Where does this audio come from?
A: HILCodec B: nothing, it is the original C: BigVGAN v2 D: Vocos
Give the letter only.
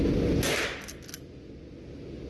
B